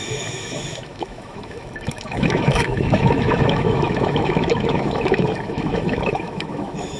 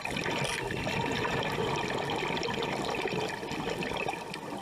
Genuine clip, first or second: second